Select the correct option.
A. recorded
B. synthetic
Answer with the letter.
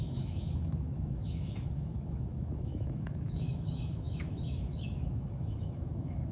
B